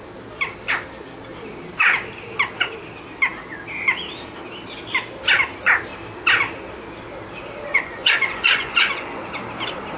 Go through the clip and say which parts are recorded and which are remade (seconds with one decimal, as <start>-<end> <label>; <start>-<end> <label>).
0.0-7.7 recorded; 7.7-9.4 remade; 9.4-10.0 recorded